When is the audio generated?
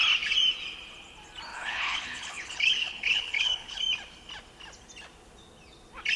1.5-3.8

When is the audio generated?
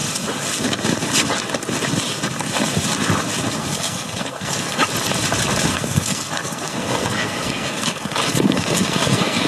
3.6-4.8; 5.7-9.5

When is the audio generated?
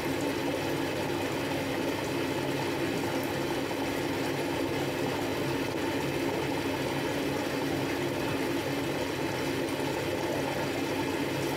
none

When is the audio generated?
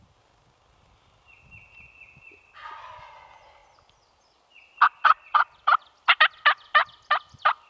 none